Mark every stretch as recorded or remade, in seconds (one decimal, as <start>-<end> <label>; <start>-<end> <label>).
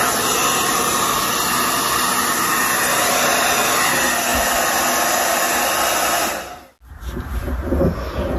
0.0-8.4 recorded